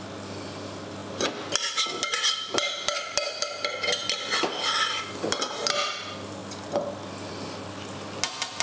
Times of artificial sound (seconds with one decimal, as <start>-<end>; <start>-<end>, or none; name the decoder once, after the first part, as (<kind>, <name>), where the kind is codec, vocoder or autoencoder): none